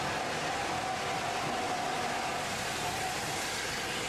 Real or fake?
real